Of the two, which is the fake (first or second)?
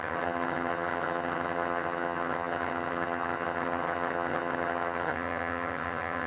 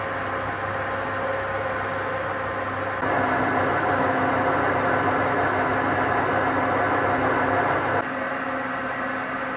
first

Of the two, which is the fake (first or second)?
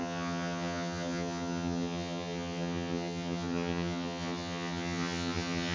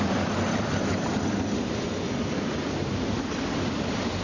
first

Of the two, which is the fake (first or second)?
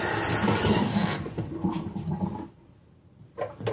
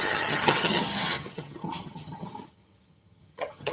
second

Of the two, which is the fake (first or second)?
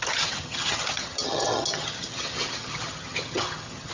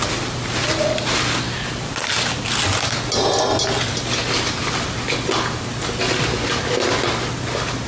first